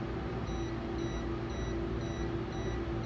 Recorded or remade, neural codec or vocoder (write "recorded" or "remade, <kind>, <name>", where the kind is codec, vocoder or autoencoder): recorded